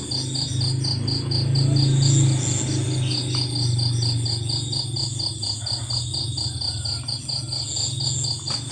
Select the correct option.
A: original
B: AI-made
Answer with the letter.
A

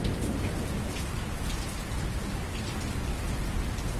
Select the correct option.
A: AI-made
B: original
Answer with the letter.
B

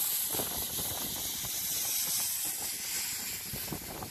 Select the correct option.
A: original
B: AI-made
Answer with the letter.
A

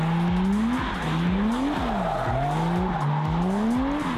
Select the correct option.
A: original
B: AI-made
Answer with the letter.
A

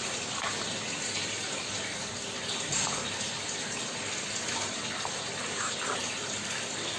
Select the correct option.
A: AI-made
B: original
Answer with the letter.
B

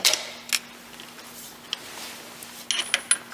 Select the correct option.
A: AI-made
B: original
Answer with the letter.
B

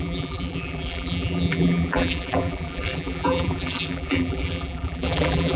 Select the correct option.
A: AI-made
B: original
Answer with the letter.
A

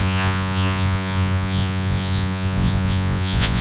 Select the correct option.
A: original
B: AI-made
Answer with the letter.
B